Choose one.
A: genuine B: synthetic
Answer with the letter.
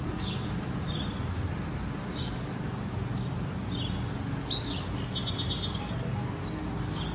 A